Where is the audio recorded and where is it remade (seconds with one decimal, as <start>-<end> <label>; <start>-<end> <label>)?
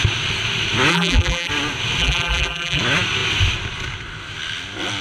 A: 0.0-0.9 recorded; 0.9-1.5 remade; 1.5-2.0 recorded; 2.0-2.8 remade; 2.8-5.0 recorded